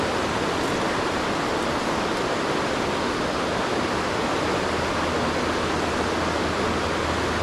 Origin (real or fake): real